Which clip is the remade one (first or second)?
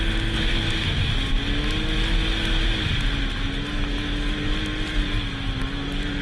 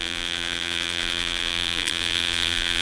second